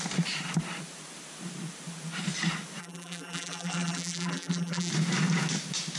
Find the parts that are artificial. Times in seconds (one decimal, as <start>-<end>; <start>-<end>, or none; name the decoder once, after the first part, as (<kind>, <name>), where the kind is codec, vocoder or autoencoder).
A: 2.8-4.9 (vocoder, BigVGAN v2)